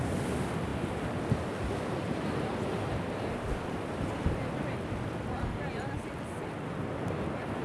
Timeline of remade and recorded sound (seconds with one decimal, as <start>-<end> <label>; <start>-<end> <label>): 0.0-7.6 recorded